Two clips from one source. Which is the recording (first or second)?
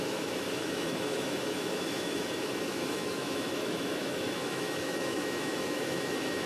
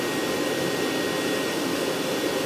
second